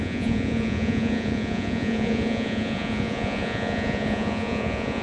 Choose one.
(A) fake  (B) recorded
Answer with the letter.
A